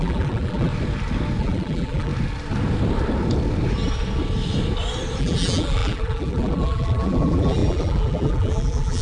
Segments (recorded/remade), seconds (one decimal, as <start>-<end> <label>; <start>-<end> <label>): 0.0-0.7 remade; 0.7-1.4 recorded; 1.4-2.1 remade; 2.1-5.2 recorded; 5.2-9.0 remade